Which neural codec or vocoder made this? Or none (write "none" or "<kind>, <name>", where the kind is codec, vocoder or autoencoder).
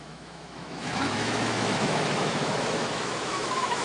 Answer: autoencoder, DAC-VAE